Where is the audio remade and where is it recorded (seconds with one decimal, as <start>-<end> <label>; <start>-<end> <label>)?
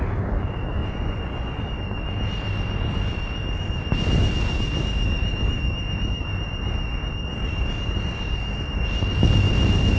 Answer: 0.0-0.8 recorded; 0.8-1.6 remade; 1.6-10.0 recorded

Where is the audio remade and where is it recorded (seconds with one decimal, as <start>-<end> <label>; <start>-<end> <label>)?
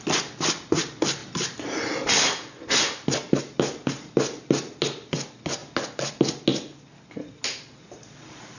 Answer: 0.0-8.6 recorded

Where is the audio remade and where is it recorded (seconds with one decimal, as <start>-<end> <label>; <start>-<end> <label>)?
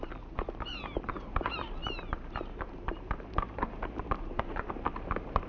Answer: 0.0-5.5 remade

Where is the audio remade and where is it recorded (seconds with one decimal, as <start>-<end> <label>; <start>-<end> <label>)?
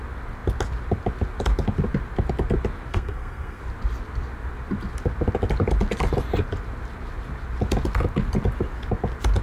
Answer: 0.0-2.9 recorded; 2.9-3.6 remade; 3.6-9.4 recorded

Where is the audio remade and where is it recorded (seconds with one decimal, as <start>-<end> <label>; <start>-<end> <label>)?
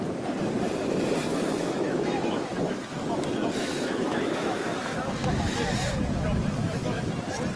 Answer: 0.0-1.3 recorded; 1.3-5.4 remade; 5.4-6.6 recorded; 6.6-7.1 remade; 7.1-7.6 recorded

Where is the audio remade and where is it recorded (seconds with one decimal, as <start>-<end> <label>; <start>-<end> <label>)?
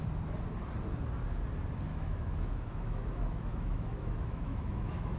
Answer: 0.0-1.9 recorded; 1.9-5.2 remade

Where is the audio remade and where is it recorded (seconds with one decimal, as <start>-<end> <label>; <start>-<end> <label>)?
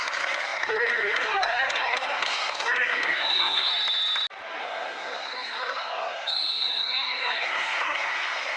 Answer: 0.0-3.7 remade; 3.7-4.6 recorded; 4.6-8.6 remade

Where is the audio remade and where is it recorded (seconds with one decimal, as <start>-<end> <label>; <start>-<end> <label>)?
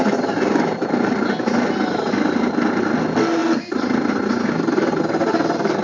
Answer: 0.0-5.8 recorded